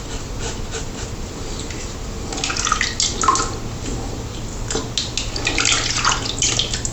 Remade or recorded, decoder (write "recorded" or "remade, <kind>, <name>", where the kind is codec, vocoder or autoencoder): recorded